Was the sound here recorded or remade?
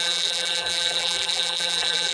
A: remade